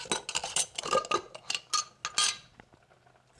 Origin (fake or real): real